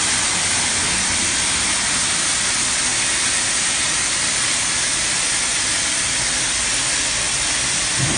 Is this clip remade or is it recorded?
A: recorded